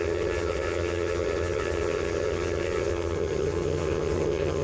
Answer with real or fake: fake